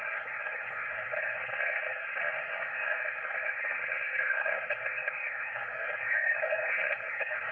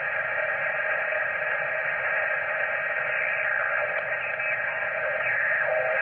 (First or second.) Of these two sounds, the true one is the second